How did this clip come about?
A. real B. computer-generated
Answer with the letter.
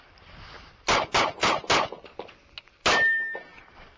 A